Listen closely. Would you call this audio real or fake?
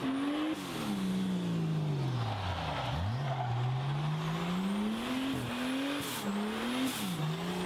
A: real